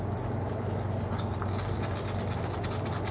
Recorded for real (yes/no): yes